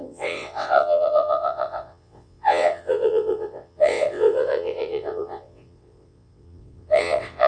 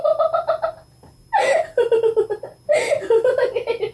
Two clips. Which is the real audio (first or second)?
second